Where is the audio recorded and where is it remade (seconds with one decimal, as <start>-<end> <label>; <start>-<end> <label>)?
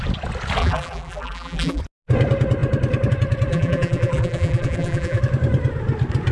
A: 0.0-0.6 recorded; 0.6-1.8 remade; 1.8-3.5 recorded; 3.5-5.2 remade; 5.2-6.3 recorded